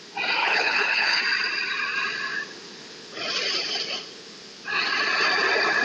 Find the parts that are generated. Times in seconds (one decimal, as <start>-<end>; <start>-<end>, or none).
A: 0.4-1.2